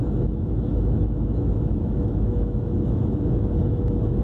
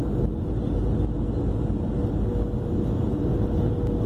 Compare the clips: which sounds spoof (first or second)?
first